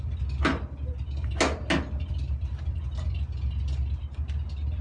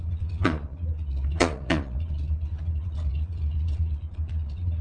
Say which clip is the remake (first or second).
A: second